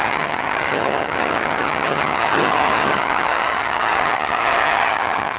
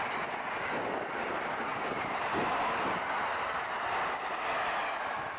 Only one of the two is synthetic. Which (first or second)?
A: first